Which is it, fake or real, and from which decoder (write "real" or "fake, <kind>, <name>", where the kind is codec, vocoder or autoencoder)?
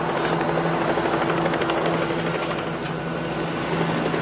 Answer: real